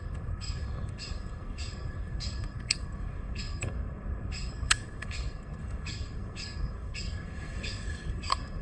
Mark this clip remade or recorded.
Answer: remade